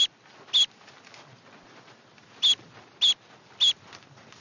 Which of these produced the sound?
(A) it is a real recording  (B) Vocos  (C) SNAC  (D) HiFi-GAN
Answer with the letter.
A